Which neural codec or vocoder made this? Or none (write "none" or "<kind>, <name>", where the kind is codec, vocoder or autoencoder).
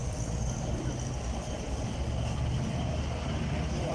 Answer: none